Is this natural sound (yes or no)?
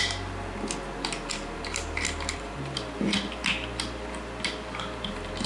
yes